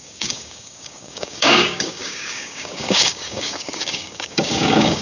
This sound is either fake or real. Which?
fake